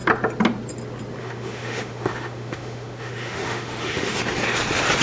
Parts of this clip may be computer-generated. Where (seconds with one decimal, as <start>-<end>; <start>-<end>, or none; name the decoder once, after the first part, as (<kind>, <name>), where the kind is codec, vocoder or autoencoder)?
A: 1.2-4.2 (autoencoder, DAC-VAE)